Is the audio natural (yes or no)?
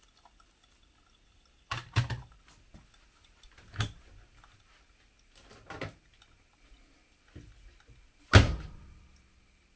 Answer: yes